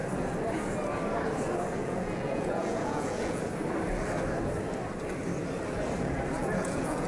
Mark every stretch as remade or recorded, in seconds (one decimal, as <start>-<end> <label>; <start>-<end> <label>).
0.0-1.8 recorded; 1.8-3.4 remade; 3.4-6.4 recorded; 6.4-7.1 remade